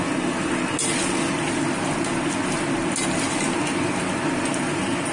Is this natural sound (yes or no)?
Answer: yes